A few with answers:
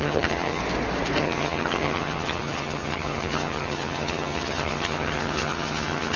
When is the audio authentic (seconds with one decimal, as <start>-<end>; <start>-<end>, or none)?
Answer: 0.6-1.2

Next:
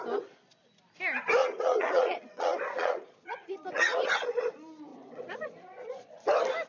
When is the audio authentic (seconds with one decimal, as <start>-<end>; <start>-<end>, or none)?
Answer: 0.0-1.4; 4.5-4.9; 6.2-6.7

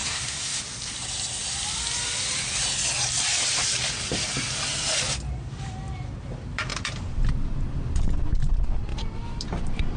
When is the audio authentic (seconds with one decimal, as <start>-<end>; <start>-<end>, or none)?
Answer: 0.6-10.0

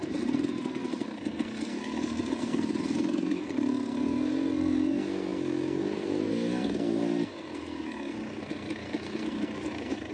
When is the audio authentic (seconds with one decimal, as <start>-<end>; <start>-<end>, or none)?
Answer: none